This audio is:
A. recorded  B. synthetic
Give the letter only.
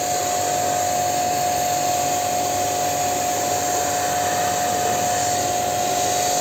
A